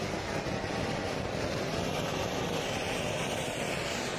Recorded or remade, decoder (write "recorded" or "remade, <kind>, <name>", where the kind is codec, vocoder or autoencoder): remade, vocoder, BigVGAN v2